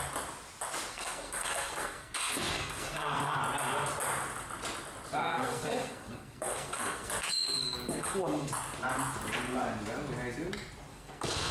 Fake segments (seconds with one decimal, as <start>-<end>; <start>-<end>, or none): 0.9-3.4; 5.2-8.5; 10.9-11.5